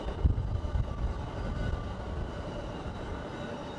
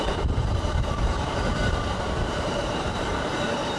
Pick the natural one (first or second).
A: first